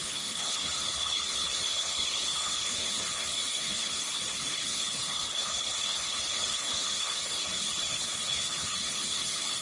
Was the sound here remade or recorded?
remade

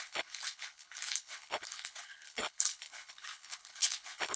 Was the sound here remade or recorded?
remade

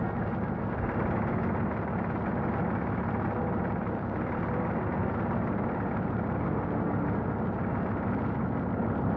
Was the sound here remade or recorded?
recorded